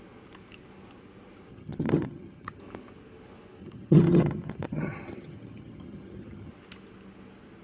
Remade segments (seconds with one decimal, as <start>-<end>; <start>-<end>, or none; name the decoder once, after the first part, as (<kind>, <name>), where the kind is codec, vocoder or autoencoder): 1.5-2.6 (vocoder, HiFi-GAN); 3.6-6.5